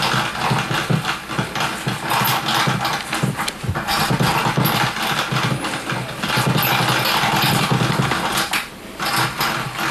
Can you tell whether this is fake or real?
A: real